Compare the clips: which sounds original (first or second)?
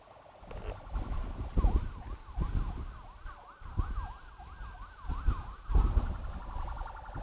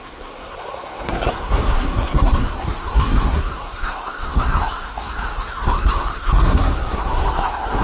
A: first